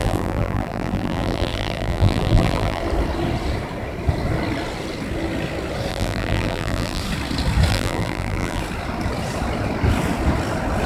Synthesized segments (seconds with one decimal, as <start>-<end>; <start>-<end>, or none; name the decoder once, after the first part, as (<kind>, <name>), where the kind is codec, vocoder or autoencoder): 0.0-2.8 (vocoder, BigVGAN v2); 5.9-7.0; 7.7-8.6